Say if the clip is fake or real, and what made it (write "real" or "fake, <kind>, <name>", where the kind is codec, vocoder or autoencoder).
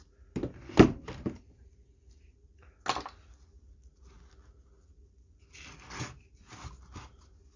real